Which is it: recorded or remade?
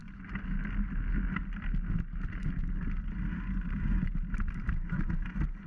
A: recorded